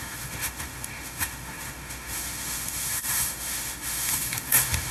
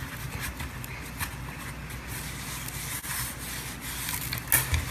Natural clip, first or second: second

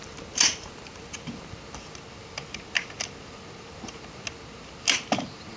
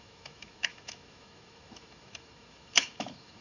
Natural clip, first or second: first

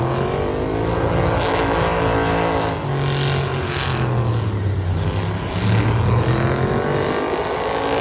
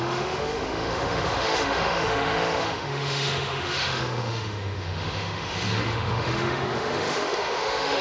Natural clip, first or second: first